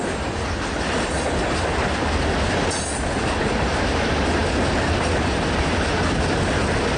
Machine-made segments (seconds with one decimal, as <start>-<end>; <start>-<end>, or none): none